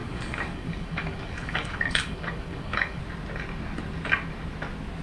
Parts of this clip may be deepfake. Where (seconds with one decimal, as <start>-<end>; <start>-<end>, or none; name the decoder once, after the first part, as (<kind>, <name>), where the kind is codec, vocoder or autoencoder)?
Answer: 0.0-3.0 (codec, DAC)